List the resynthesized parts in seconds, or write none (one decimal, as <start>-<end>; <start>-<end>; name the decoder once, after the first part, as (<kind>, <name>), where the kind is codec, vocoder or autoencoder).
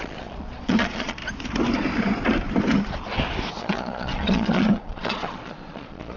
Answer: 0.0-1.2 (vocoder, Vocos); 3.5-6.2